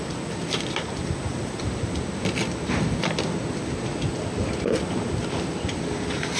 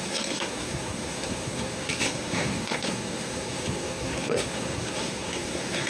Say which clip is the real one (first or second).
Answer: first